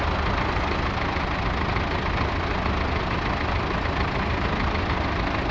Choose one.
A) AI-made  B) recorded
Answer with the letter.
B